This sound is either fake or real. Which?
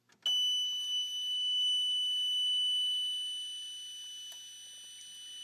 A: real